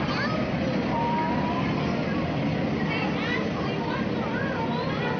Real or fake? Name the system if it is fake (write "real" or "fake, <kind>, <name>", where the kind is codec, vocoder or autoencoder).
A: real